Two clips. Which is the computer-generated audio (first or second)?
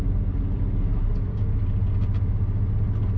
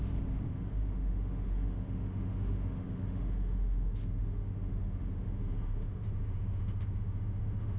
second